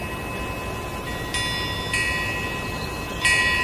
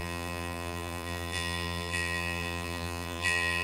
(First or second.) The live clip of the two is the first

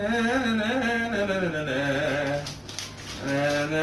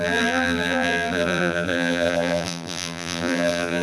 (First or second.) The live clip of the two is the first